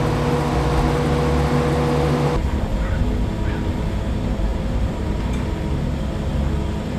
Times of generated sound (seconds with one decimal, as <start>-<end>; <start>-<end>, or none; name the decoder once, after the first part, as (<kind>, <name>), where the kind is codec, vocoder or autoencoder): 4.5-5.2 (vocoder, BigVGAN v2)